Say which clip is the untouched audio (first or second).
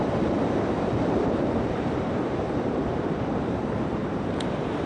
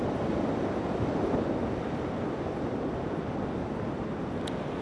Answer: second